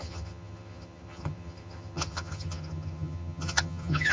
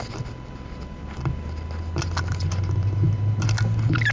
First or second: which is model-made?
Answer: first